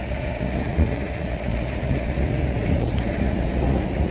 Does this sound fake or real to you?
fake